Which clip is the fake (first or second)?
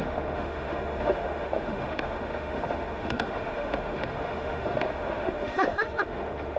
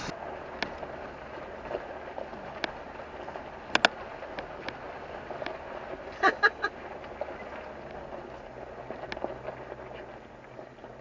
first